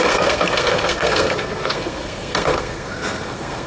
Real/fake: fake